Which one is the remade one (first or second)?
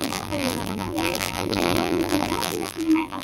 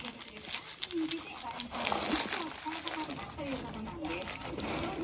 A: first